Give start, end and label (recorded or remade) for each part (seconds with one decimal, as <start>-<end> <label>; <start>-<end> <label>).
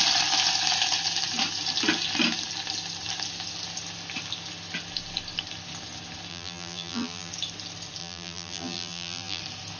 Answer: 0.0-6.3 recorded; 6.3-7.3 remade; 7.3-8.0 recorded; 8.0-9.4 remade; 9.4-9.8 recorded